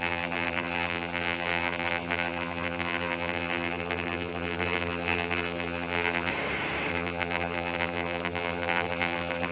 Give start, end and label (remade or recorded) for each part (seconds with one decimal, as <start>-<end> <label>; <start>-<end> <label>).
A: 0.0-6.3 remade; 6.3-6.9 recorded; 6.9-9.5 remade